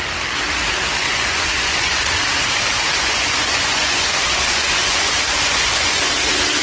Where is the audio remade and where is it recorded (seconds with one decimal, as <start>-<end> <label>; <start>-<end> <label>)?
0.0-1.0 recorded; 1.0-2.0 remade; 2.0-3.0 recorded; 3.0-6.0 remade; 6.0-6.6 recorded